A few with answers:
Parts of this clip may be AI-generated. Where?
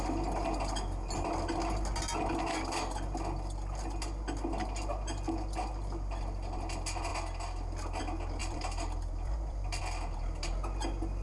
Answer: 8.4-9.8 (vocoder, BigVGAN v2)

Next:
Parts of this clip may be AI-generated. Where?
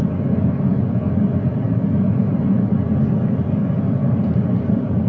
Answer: 1.5-2.4 (vocoder, BigVGAN v2); 4.0-5.1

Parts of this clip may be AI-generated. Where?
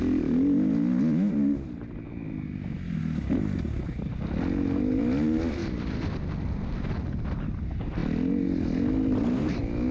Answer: 5.6-6.1 (vocoder, BigVGAN v2)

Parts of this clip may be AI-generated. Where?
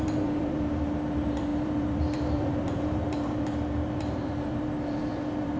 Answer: 0.0-5.6 (vocoder, BigVGAN v2)